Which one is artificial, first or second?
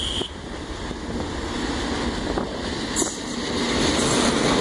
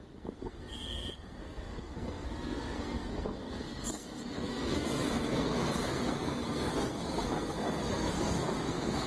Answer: second